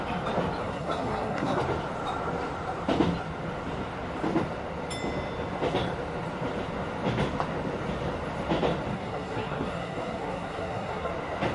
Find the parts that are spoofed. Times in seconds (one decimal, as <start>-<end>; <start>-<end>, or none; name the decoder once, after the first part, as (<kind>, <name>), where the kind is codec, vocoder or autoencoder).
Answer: 0.6-1.6 (codec, SNAC); 8.9-11.1